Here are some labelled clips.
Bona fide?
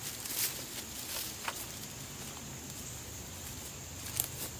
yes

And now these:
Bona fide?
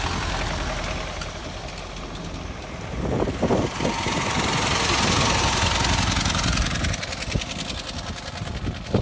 yes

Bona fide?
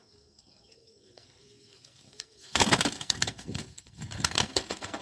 no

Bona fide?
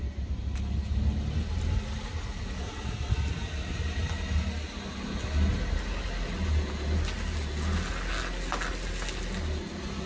yes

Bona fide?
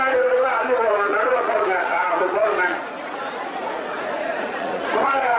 no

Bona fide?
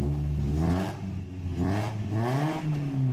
yes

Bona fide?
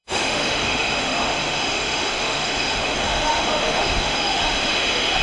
no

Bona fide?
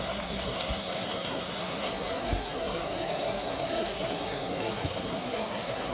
no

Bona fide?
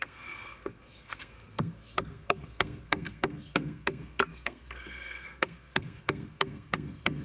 no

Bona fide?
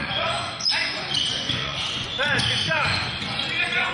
no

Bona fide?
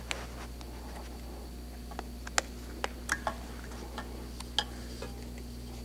yes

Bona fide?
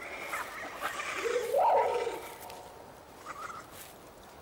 yes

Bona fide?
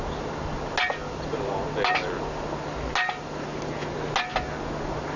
yes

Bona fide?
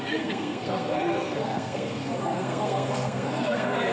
no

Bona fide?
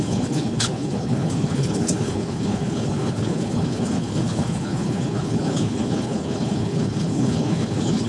no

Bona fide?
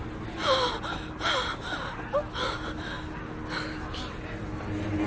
yes